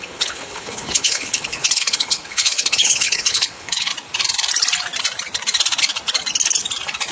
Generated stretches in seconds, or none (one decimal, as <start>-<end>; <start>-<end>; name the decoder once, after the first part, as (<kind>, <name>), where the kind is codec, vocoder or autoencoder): 0.0-3.9 (codec, HILCodec)